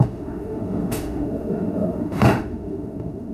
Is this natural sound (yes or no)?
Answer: no